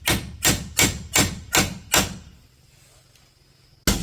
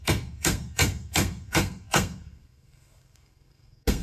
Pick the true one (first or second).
first